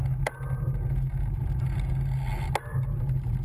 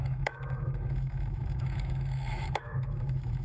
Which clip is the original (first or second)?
first